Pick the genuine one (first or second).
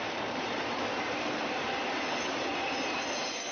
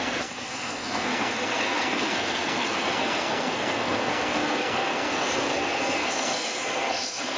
first